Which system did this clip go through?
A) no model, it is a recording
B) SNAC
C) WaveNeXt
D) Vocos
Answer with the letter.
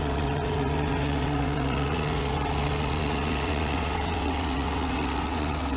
C